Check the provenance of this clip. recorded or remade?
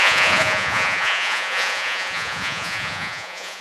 remade